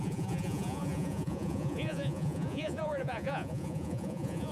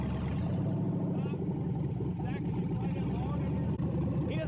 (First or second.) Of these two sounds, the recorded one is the second